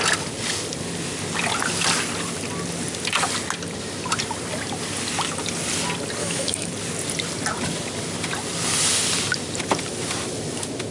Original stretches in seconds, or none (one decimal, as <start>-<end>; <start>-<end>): 0.0-6.2; 6.7-10.9